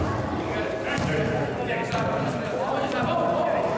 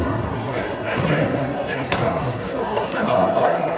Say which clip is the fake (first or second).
second